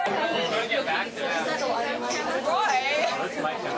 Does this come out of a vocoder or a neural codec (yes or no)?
no